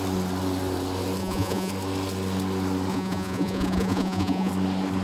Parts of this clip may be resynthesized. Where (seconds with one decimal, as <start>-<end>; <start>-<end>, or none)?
1.2-1.7; 2.9-4.5